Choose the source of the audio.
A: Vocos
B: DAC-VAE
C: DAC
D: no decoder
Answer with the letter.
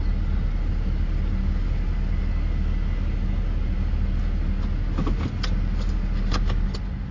D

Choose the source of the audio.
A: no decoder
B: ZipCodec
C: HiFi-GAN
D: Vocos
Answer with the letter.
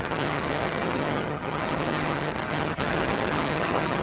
C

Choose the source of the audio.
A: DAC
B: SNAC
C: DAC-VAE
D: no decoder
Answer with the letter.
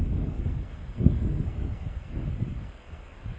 B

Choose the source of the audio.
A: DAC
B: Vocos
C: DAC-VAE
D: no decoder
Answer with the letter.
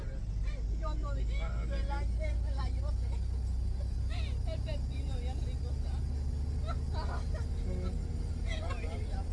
D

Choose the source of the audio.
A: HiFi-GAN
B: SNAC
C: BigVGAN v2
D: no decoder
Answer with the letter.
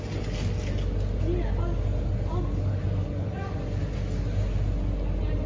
D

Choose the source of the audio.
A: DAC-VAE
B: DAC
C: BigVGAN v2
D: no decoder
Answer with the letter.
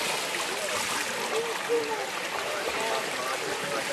D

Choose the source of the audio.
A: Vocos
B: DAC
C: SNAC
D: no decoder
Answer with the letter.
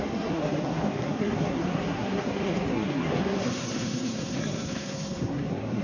C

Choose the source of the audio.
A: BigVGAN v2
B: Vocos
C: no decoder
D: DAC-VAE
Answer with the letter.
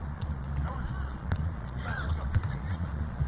B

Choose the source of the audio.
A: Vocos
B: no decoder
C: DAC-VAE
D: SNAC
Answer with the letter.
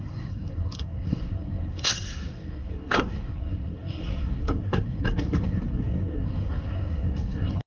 D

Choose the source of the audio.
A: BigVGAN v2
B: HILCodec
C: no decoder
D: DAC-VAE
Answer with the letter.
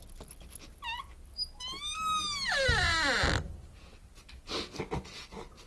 C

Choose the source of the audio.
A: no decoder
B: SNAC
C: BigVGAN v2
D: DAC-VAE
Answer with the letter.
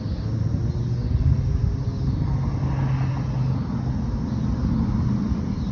A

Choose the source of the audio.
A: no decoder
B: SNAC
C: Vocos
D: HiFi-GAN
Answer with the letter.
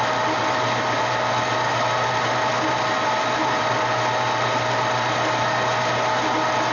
A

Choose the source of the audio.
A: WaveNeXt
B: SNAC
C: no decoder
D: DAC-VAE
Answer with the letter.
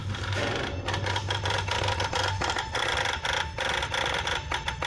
C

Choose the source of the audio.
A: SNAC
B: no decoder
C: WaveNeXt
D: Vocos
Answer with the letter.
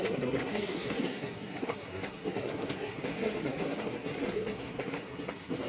A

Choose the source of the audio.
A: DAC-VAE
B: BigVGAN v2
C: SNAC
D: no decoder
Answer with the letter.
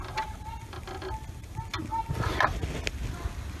D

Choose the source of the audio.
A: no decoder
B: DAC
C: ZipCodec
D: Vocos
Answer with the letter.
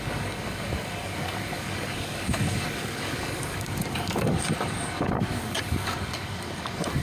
B